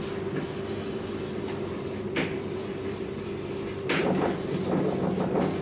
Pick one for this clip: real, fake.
real